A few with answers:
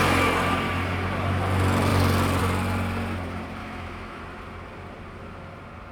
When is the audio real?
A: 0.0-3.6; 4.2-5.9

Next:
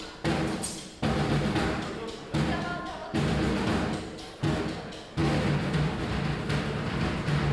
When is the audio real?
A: 0.0-7.5